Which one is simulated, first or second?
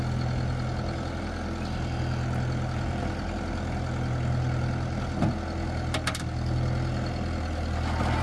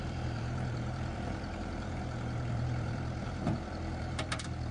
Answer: second